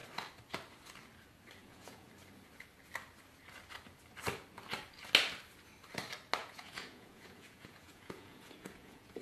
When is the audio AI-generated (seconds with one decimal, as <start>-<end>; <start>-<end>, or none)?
1.6-2.1; 6.4-9.2